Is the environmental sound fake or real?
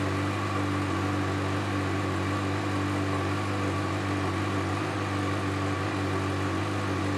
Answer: real